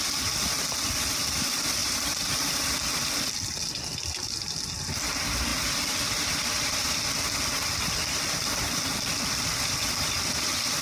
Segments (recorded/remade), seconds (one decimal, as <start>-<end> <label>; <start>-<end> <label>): 0.0-1.8 recorded; 1.8-2.7 remade; 2.7-10.8 recorded